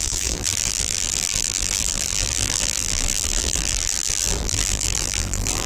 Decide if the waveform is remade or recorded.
remade